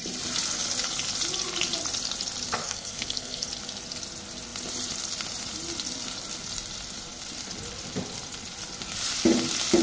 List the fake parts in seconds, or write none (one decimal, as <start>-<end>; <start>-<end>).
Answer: 2.6-3.5